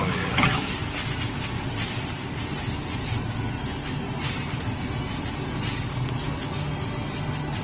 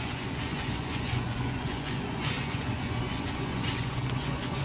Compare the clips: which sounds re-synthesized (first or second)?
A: second